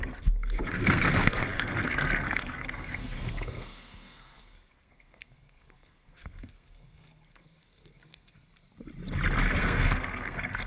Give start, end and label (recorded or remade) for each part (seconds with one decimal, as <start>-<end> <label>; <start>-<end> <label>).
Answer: 0.0-8.5 remade; 8.5-9.6 recorded; 9.6-10.7 remade